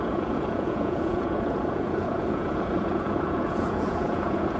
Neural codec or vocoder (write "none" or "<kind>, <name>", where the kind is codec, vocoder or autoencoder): vocoder, Vocos